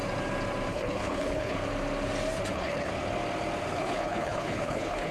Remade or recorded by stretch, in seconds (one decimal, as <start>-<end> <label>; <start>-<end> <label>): 0.0-0.7 recorded; 0.7-1.6 remade; 1.6-2.5 recorded; 2.5-2.9 remade; 2.9-3.7 recorded; 3.7-5.1 remade